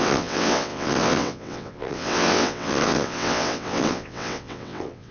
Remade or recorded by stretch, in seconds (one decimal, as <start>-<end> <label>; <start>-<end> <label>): 0.0-5.1 remade